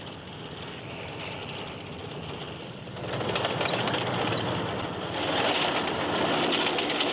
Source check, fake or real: real